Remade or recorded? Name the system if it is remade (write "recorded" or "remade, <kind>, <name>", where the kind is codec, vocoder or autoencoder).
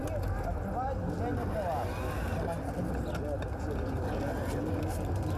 recorded